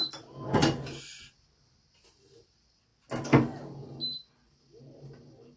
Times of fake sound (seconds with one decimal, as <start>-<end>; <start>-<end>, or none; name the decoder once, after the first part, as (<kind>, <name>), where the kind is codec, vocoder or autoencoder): none